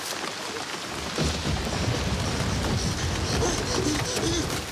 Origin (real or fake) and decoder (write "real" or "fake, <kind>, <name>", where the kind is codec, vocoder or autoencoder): real